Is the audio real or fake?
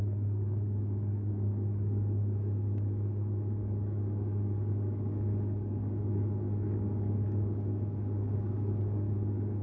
fake